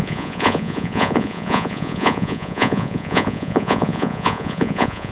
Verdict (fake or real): fake